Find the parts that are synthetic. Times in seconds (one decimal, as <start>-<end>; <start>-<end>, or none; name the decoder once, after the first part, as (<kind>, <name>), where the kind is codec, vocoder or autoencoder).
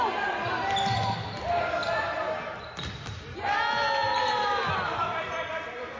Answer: none